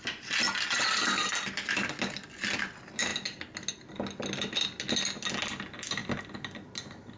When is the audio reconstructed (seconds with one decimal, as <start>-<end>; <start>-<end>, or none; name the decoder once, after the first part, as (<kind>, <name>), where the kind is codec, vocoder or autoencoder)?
none